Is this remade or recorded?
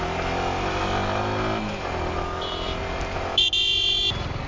recorded